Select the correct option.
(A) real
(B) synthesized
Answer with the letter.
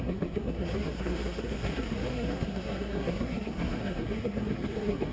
B